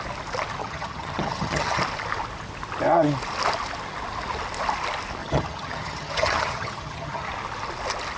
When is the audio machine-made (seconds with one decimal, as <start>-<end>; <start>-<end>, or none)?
0.6-1.8; 5.2-7.3